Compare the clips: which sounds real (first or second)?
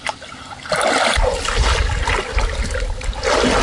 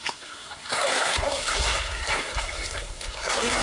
first